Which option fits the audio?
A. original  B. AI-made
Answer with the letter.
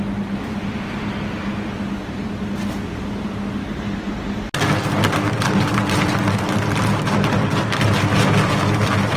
A